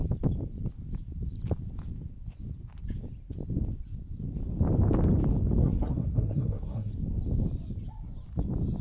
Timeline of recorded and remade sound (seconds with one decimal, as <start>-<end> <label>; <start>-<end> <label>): 0.0-5.6 recorded; 5.6-6.9 remade; 6.9-8.8 recorded

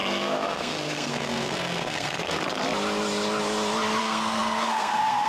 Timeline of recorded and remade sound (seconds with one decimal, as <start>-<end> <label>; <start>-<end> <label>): 0.0-2.4 remade; 2.4-4.0 recorded; 4.0-5.3 remade